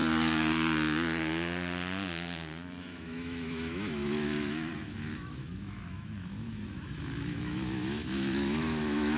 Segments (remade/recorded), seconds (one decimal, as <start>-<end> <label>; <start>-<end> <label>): 0.0-2.8 recorded; 2.8-9.2 remade